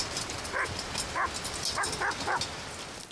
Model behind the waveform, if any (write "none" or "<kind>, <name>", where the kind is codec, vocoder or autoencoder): none